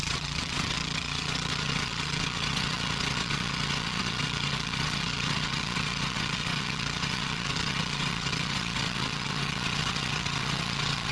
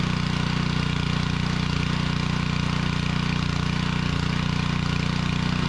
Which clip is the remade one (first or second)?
first